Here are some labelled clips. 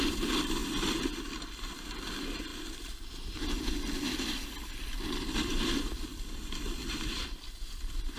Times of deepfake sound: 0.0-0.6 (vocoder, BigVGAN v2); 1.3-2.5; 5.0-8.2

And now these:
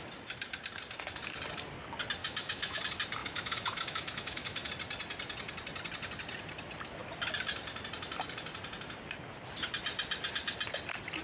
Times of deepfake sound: 2.2-2.8 (autoencoder, DAC-VAE); 3.2-4.7

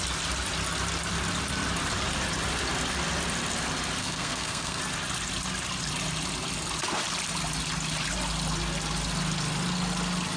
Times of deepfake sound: 4.0-4.8 (codec, SNAC)

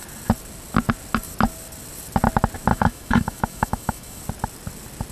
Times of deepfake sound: 2.7-4.2 (autoencoder, DAC-VAE)